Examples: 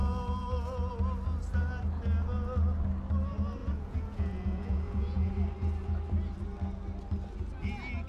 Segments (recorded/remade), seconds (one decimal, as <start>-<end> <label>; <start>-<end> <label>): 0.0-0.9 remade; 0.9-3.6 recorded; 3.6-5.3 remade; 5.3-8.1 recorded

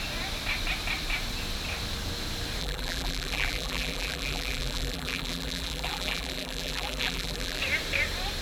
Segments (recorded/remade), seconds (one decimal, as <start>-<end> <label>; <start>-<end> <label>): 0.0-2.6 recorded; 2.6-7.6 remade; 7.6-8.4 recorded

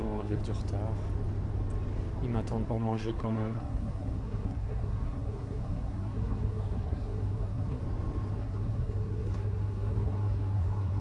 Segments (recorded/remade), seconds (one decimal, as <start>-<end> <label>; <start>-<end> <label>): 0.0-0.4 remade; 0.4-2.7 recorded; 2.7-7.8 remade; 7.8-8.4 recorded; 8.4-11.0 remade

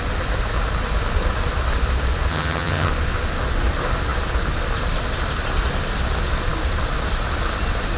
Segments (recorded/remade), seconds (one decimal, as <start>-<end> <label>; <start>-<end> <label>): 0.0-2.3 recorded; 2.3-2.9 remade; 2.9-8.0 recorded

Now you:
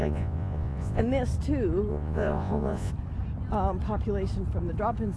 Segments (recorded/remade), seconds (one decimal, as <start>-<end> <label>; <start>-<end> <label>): 0.0-1.0 remade; 1.0-1.9 recorded; 1.9-2.9 remade; 2.9-5.2 recorded